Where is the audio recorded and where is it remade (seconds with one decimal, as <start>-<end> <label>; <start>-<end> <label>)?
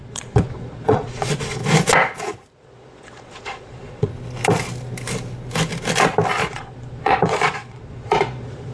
0.0-1.6 remade; 1.6-2.5 recorded; 2.5-4.1 remade; 4.1-6.4 recorded; 6.4-8.7 remade